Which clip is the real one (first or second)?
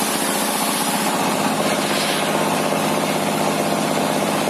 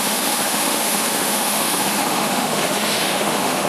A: first